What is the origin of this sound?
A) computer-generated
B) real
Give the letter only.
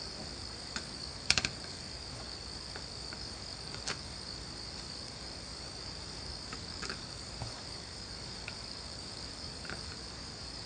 A